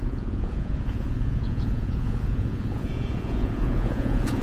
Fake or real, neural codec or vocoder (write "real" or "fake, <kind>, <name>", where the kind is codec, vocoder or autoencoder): fake, vocoder, Vocos